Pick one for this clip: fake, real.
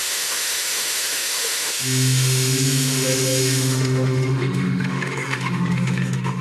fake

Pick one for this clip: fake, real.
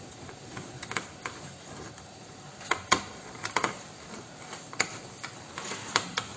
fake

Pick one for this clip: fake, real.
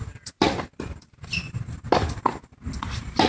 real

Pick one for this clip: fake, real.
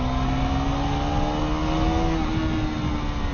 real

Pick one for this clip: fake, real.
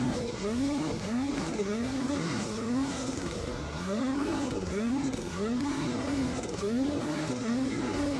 fake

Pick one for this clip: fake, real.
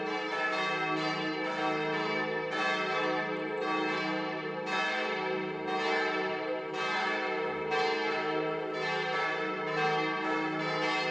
real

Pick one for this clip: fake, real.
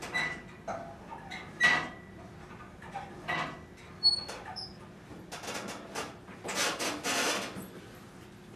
real